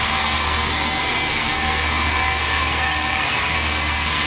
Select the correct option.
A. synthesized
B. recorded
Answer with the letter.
A